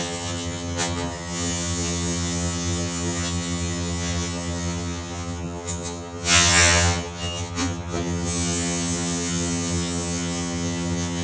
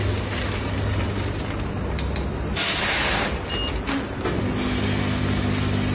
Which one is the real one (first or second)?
second